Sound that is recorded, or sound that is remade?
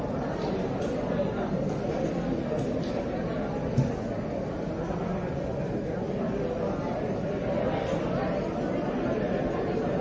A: recorded